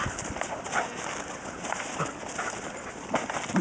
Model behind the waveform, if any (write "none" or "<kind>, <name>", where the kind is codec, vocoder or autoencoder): none